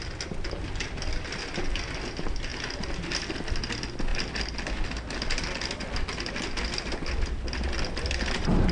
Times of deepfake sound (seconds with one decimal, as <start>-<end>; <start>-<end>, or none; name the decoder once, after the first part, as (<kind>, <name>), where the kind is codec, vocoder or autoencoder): none